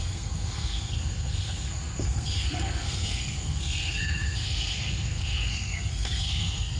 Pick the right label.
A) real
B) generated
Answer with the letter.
B